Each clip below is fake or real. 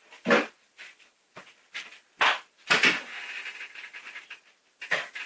real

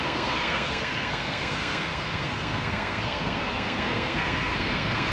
fake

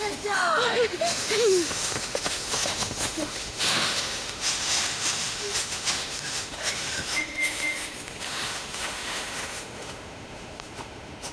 fake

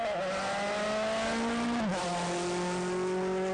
real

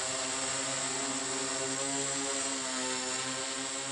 real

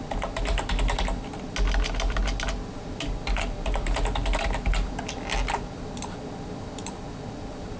real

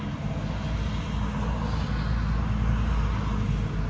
real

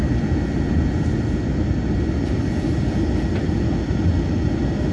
real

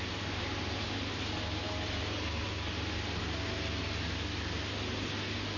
real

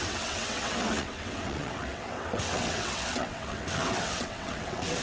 fake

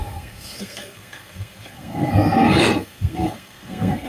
fake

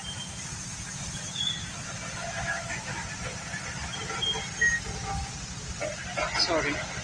real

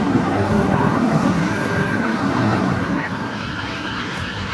fake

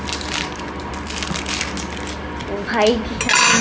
real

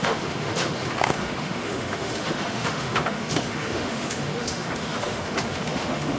fake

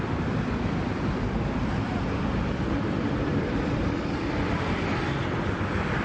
fake